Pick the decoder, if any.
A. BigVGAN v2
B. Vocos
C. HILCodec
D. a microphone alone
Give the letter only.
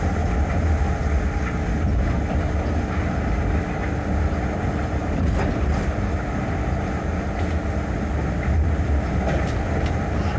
D